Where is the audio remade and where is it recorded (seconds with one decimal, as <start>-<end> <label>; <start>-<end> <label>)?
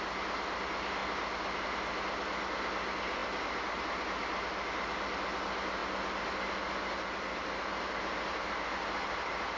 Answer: 0.0-9.6 recorded